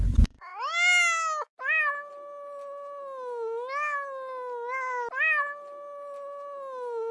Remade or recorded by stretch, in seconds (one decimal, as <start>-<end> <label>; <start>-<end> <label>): 0.0-7.1 recorded